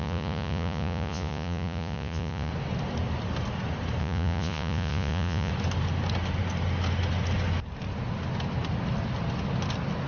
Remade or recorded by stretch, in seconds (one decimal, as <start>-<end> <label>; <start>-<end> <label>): 0.0-2.5 remade; 2.5-4.0 recorded; 4.0-5.5 remade; 5.5-10.1 recorded